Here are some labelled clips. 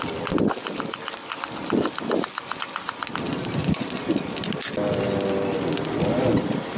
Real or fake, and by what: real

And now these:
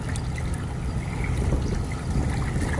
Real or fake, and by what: real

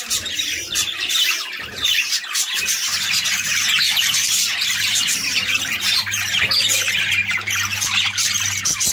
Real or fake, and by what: fake, vocoder, BigVGAN v2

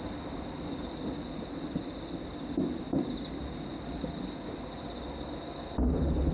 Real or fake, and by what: real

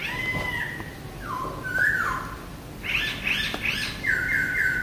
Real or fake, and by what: real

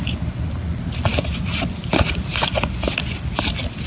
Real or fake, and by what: real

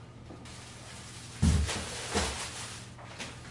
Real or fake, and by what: real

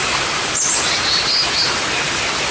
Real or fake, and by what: real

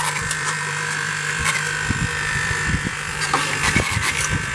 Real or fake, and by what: fake, vocoder, BigVGAN v2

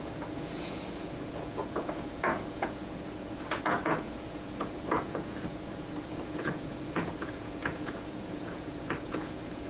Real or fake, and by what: fake, vocoder, Vocos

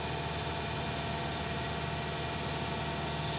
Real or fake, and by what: real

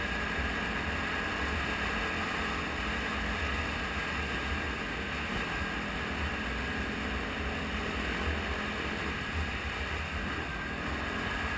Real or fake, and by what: real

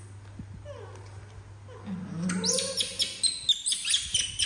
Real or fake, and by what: real